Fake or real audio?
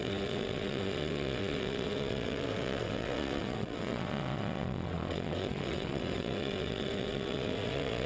fake